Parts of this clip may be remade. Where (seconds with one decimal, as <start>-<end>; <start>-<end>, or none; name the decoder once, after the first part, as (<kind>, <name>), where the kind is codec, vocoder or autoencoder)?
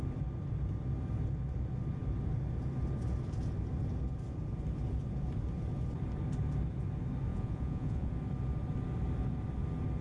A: 7.3-8.1 (vocoder, Vocos)